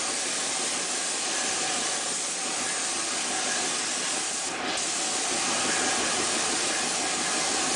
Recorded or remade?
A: recorded